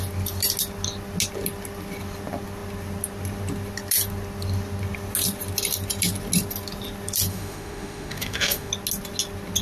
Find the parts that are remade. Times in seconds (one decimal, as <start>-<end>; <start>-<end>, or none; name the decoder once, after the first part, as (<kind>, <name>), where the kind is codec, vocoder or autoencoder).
7.3-8.7 (autoencoder, DAC-VAE)